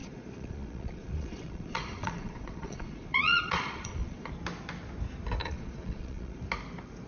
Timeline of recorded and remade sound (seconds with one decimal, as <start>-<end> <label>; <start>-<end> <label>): 0.0-4.3 remade; 4.3-5.4 recorded; 5.4-6.4 remade; 6.4-7.1 recorded